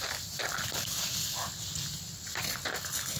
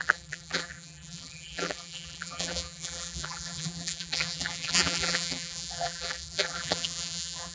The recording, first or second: first